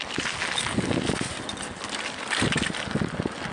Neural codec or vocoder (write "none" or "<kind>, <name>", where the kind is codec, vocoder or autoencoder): none